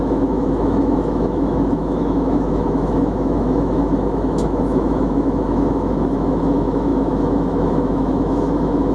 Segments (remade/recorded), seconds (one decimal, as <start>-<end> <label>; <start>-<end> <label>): 0.0-8.9 remade